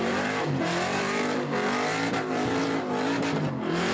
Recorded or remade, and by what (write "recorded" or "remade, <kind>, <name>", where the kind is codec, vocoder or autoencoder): remade, vocoder, BigVGAN v2